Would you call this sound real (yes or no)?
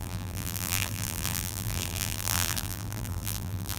no